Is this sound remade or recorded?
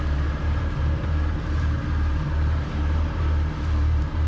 remade